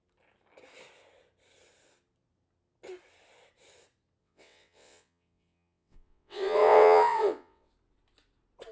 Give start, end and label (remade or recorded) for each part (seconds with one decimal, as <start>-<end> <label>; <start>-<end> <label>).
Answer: 0.0-4.2 recorded; 4.2-7.7 remade; 7.7-8.7 recorded